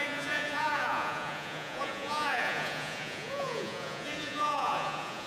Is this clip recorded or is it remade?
remade